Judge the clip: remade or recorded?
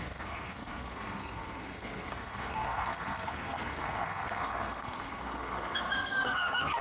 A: remade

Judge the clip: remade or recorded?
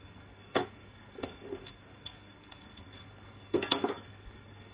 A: remade